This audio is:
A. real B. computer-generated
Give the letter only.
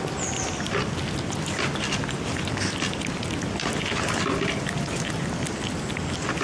A